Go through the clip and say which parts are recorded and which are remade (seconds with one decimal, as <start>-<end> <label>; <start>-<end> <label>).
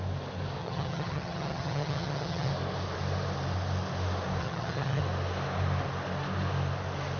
0.0-0.6 recorded; 0.6-2.5 remade; 2.5-4.4 recorded; 4.4-5.0 remade; 5.0-7.2 recorded